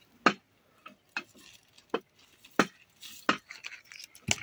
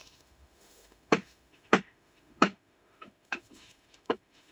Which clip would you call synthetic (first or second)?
second